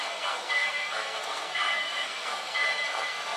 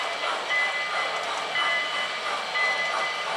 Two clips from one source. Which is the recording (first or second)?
second